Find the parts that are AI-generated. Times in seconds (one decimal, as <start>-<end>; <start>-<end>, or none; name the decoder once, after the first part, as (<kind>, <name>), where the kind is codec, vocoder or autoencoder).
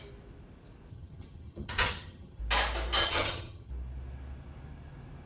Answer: 0.9-2.4 (vocoder, HiFi-GAN); 3.0-3.7